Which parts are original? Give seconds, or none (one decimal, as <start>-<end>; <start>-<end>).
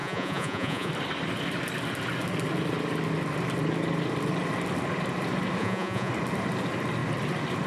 0.9-5.6; 6.1-7.7